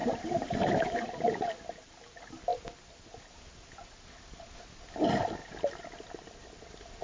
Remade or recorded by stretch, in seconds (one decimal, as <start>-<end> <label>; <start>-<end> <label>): 0.0-1.5 remade; 1.5-7.0 recorded